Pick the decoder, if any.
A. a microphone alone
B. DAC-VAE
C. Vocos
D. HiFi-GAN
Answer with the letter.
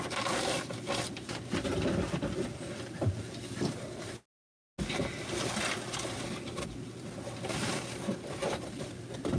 A